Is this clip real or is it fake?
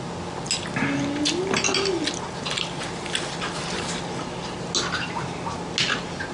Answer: real